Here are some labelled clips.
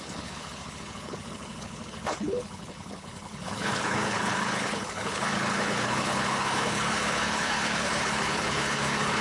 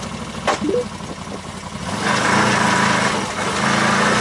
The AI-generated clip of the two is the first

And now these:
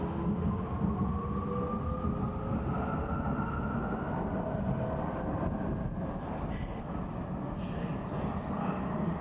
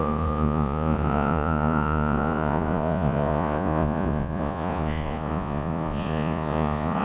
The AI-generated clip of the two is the second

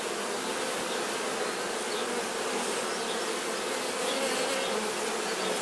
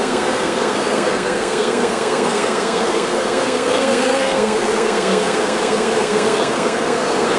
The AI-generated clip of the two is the second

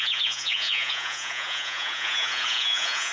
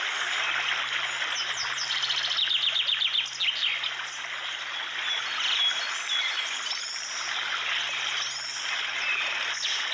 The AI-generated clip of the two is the first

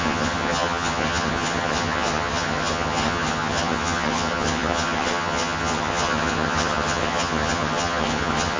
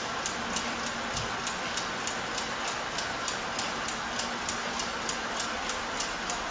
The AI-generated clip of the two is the first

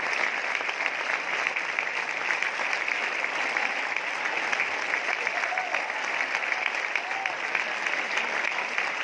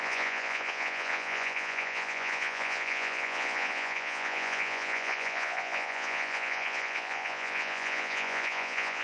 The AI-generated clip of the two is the second